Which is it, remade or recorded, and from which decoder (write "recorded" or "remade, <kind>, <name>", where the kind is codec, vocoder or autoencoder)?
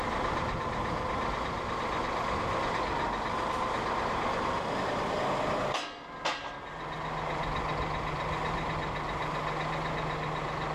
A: recorded